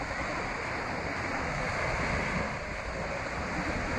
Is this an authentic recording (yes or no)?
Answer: yes